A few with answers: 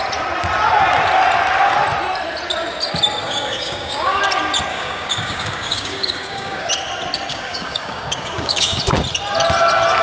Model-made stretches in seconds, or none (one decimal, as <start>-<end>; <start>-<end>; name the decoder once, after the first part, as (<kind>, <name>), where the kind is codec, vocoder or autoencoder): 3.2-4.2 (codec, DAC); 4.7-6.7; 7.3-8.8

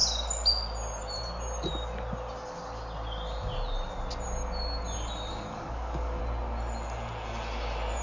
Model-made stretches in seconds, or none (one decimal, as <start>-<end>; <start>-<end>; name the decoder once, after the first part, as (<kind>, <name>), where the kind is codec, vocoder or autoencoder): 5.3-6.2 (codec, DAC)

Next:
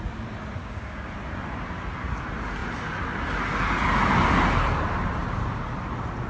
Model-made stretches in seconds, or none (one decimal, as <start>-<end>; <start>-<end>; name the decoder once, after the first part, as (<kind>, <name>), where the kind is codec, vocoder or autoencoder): 0.6-1.1 (codec, DAC)

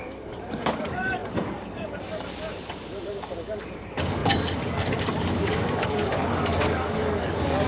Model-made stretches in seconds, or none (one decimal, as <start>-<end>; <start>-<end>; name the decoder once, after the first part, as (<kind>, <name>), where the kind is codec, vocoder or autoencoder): 0.0-7.7 (codec, DAC)

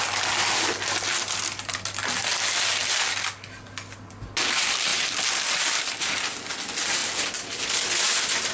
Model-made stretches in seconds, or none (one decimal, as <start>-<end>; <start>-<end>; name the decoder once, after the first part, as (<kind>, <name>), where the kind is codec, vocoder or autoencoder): none

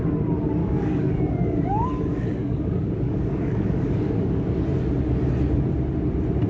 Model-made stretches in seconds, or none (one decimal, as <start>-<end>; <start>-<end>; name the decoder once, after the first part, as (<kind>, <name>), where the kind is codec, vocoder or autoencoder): 0.6-4.5 (codec, DAC)

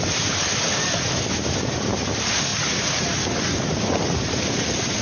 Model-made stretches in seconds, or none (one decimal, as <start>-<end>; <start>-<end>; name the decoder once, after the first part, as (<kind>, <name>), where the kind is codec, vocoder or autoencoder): none

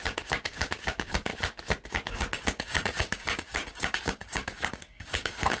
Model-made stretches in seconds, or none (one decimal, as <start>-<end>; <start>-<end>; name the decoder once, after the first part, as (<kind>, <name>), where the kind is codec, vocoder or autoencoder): 0.0-1.3 (codec, DAC); 1.9-5.6